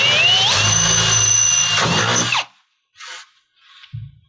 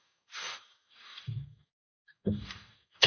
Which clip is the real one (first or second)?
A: first